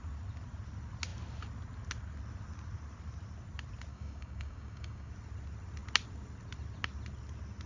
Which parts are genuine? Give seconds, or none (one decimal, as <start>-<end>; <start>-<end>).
0.0-3.9; 5.1-7.7